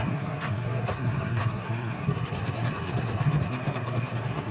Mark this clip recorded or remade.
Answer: remade